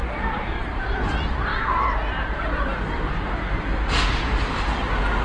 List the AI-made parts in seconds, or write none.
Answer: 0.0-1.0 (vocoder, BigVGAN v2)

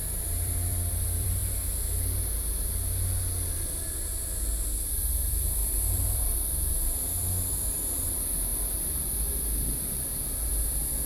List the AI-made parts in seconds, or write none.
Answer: 0.0-1.4 (vocoder, BigVGAN v2); 3.9-11.1

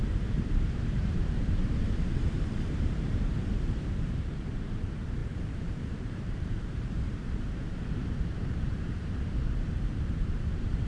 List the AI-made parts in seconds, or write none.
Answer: 0.0-10.9 (vocoder, BigVGAN v2)

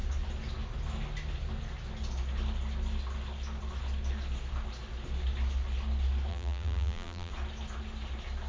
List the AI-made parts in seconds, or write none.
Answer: 6.3-7.3 (vocoder, BigVGAN v2)

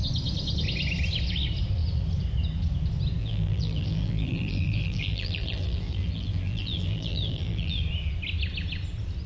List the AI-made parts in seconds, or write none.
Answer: 3.2-7.8 (vocoder, BigVGAN v2)

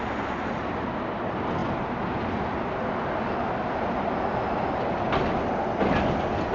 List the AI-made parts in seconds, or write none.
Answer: none

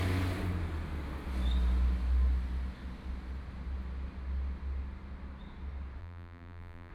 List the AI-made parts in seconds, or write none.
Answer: 6.0-6.9 (vocoder, BigVGAN v2)

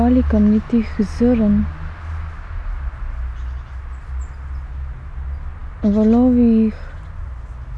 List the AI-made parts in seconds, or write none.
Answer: none